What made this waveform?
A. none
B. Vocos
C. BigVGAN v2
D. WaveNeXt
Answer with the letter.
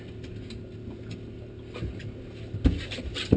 A